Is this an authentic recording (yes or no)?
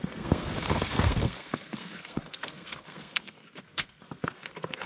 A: no